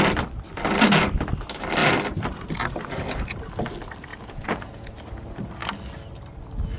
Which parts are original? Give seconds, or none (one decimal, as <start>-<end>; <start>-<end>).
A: 0.0-4.1; 4.9-6.8